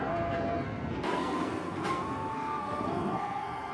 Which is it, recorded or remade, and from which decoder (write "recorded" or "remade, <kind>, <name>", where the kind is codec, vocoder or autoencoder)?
remade, codec, SNAC